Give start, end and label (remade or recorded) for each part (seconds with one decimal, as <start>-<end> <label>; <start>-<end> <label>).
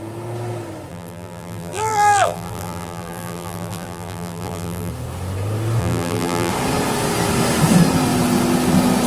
0.0-0.9 recorded; 0.9-4.9 remade; 4.9-5.8 recorded; 5.8-6.5 remade; 6.5-9.1 recorded